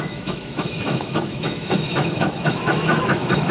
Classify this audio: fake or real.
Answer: fake